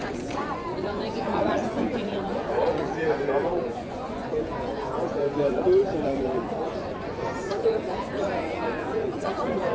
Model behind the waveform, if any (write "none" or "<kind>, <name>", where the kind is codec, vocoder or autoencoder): vocoder, Vocos